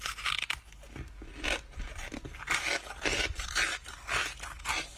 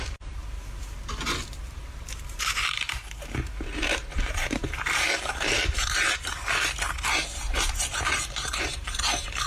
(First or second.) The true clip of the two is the first